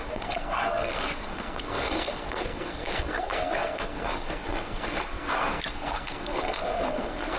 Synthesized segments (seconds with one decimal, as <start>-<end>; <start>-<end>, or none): 0.0-7.4